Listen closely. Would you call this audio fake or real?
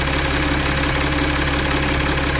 real